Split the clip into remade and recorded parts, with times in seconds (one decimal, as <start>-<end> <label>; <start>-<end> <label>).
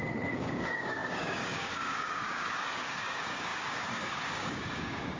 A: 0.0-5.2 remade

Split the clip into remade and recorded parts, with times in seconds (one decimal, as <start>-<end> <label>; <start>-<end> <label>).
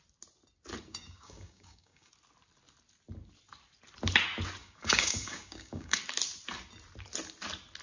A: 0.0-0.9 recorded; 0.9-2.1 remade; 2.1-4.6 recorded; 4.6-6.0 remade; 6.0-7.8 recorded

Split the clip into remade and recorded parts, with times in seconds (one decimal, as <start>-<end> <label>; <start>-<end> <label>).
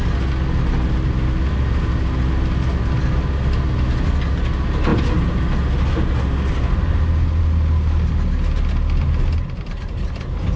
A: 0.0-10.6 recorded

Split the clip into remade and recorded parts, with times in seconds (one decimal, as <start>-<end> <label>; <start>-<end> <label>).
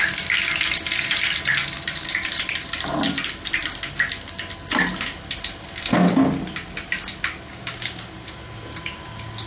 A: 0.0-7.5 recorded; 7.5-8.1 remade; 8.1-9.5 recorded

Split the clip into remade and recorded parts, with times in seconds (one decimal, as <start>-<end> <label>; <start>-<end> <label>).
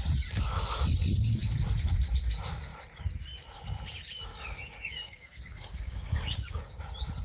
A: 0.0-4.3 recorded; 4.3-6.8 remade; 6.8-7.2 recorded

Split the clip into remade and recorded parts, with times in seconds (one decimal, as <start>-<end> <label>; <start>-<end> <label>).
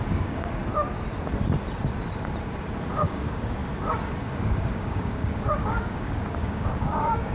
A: 0.0-0.6 remade; 0.6-2.9 recorded; 2.9-3.6 remade; 3.6-4.3 recorded; 4.3-7.3 remade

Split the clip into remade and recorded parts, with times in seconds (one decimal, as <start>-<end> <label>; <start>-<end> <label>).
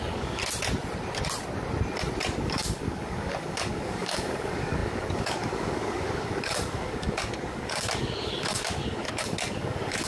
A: 0.0-0.4 remade; 0.4-2.3 recorded; 2.3-10.1 remade